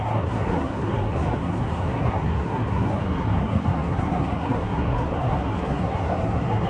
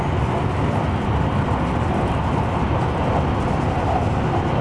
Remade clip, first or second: first